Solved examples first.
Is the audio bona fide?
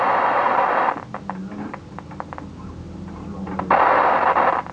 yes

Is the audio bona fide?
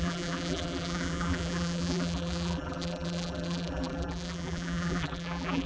no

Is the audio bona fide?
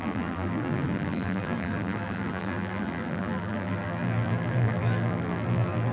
no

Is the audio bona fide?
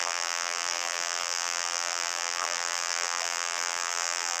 no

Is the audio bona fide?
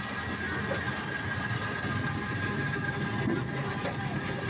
yes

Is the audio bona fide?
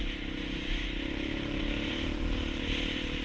no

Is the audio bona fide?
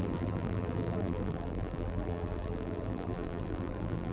no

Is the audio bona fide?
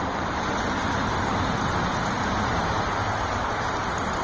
no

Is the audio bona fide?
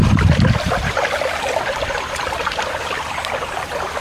yes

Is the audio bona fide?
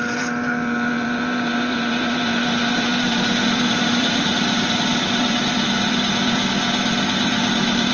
no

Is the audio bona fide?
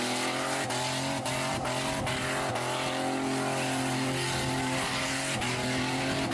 yes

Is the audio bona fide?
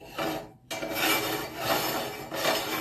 yes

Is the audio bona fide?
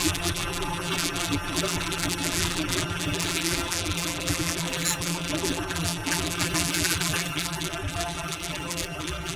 no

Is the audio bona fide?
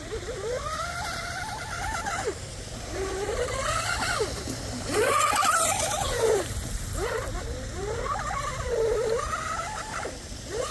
no